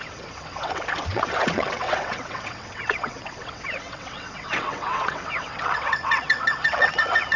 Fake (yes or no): yes